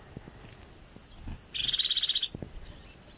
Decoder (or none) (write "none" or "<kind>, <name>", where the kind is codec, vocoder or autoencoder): none